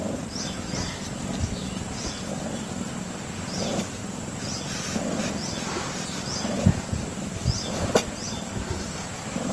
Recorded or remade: remade